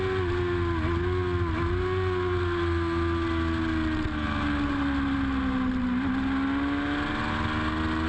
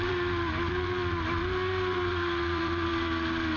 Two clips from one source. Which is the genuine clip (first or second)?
first